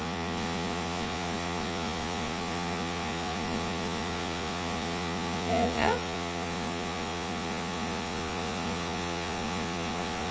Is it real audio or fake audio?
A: fake